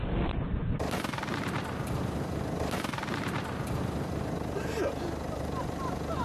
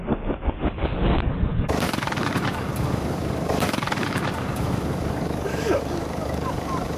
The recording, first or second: first